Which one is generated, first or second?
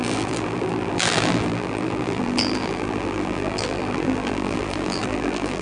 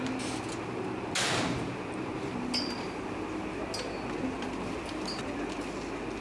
first